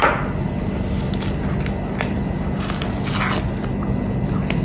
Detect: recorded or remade recorded